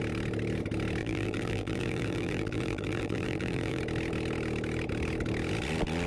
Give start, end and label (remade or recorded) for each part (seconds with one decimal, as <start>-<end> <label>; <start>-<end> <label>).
0.0-1.0 recorded; 1.0-3.8 remade; 3.8-6.1 recorded